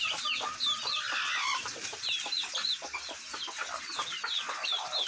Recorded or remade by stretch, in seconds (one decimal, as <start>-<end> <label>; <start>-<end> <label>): 0.0-5.1 recorded